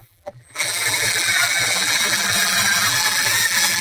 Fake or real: fake